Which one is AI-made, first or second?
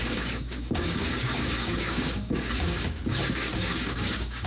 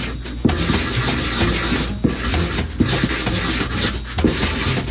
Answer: first